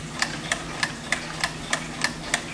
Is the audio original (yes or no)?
yes